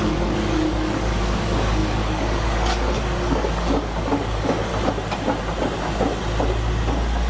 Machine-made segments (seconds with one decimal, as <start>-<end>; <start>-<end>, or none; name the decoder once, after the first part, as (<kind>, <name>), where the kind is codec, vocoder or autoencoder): 0.0-4.7 (codec, DAC)